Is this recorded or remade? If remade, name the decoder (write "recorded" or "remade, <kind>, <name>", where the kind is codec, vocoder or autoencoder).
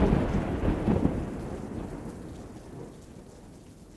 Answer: recorded